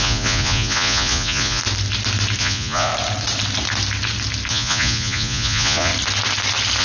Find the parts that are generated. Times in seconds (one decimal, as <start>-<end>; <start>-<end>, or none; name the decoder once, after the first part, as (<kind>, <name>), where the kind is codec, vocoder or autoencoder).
0.0-1.6 (vocoder, Vocos); 2.4-2.9; 4.5-5.9